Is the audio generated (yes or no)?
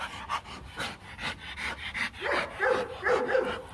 no